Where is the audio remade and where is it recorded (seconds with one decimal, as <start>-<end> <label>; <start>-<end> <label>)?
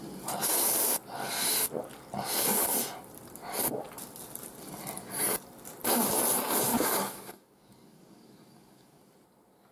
0.0-6.7 recorded; 6.7-9.0 remade; 9.0-9.7 recorded